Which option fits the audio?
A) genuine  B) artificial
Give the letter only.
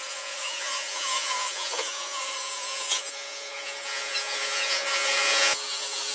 B